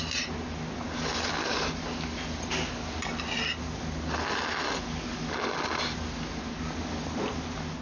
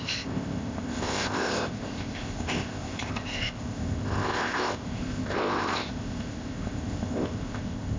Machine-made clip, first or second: second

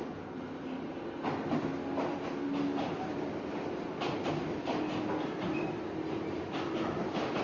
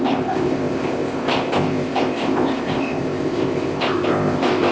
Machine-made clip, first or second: second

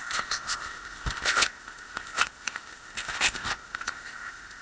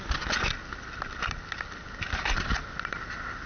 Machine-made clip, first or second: first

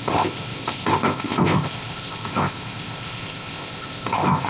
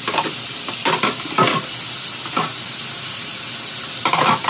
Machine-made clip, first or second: first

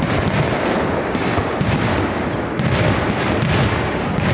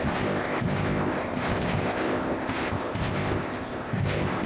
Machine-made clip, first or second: second